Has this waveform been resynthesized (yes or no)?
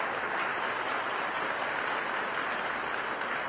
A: no